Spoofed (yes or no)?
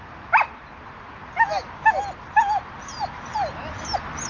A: no